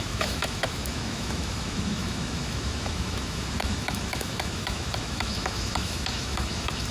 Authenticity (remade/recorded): remade